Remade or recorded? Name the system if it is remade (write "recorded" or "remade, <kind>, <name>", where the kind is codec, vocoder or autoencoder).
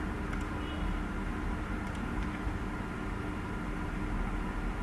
recorded